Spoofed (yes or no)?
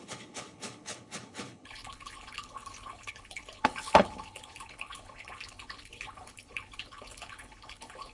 yes